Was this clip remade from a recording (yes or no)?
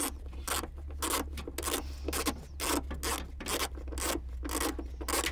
no